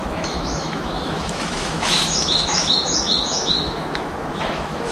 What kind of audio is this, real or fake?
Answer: fake